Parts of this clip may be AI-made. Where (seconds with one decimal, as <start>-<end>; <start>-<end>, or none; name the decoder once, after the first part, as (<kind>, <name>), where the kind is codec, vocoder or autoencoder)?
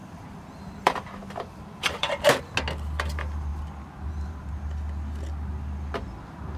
0.0-2.4 (vocoder, BigVGAN v2)